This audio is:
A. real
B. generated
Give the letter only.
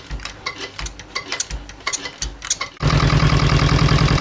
A